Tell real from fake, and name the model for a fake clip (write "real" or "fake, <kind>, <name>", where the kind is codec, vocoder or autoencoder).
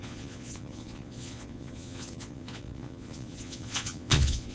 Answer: fake, vocoder, Vocos